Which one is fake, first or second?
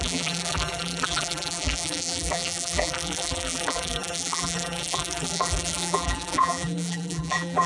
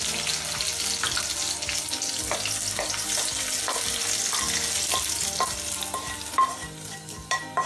first